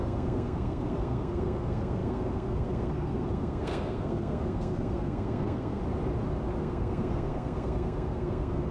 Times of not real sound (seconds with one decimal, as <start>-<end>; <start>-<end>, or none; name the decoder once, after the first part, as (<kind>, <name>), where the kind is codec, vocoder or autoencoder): 0.0-5.8 (codec, SNAC); 6.6-8.7

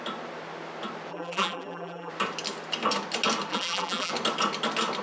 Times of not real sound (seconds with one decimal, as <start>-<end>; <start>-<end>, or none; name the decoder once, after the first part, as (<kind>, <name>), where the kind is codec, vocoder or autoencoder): 1.1-2.1 (vocoder, BigVGAN v2); 3.5-4.1

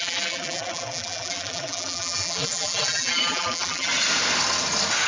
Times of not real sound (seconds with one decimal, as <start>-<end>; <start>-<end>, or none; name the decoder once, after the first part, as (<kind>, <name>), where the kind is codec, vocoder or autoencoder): 0.0-3.9 (vocoder, BigVGAN v2)

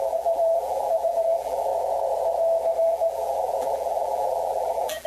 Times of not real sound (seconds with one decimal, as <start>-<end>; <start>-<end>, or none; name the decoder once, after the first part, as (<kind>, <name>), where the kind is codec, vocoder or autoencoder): 0.0-1.7 (vocoder, BigVGAN v2); 2.8-5.1

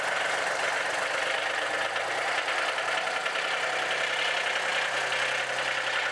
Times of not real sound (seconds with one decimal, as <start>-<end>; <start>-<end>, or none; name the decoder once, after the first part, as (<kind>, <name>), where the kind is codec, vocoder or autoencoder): none

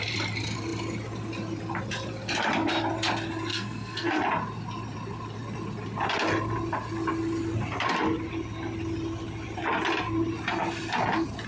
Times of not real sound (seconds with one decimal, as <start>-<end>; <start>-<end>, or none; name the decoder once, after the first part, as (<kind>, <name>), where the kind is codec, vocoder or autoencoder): 3.5-4.2 (codec, SNAC)

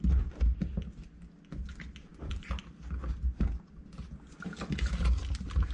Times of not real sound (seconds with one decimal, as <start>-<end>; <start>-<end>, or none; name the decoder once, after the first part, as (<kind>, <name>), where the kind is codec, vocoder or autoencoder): none